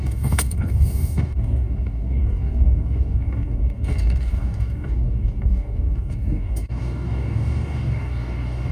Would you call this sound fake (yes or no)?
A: yes